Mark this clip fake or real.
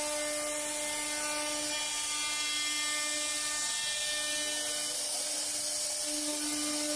real